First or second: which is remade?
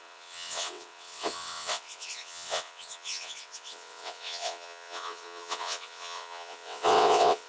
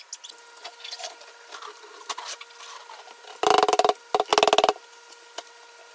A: first